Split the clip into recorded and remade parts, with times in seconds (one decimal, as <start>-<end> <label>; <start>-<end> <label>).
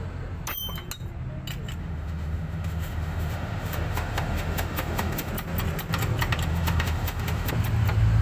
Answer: 0.0-1.8 recorded; 1.8-5.3 remade; 5.3-6.5 recorded; 6.5-7.5 remade; 7.5-8.2 recorded